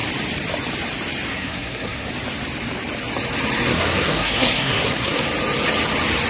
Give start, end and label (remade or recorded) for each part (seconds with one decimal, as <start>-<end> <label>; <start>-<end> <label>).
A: 0.0-1.3 recorded; 1.3-2.1 remade; 2.1-3.7 recorded; 3.7-5.2 remade; 5.2-6.3 recorded